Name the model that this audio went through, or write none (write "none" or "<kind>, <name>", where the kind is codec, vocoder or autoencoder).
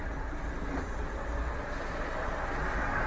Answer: none